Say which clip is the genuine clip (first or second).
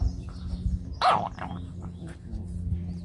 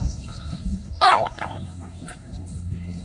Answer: first